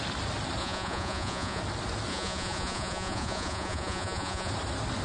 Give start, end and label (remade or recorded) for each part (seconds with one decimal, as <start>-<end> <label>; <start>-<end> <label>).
0.0-0.6 recorded; 0.6-1.6 remade; 1.6-2.1 recorded; 2.1-4.5 remade; 4.5-5.0 recorded